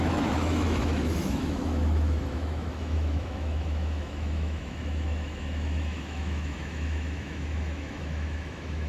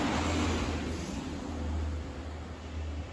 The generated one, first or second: first